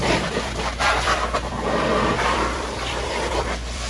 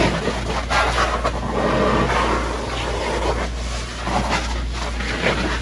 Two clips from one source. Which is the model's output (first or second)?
first